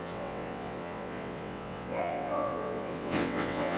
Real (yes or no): no